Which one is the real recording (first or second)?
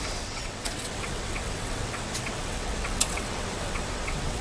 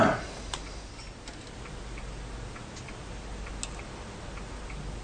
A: second